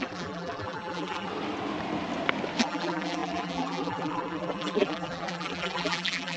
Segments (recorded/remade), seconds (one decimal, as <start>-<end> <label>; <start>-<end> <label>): 0.0-1.3 remade; 1.3-2.6 recorded; 2.6-6.4 remade